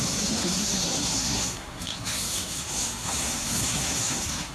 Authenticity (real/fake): fake